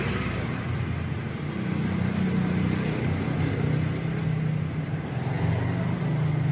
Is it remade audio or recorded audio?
recorded